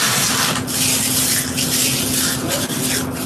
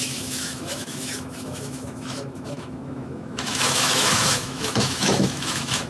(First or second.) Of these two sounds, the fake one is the second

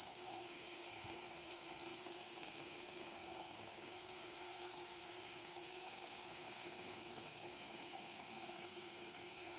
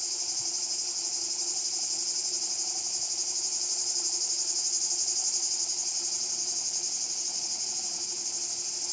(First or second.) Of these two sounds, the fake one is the first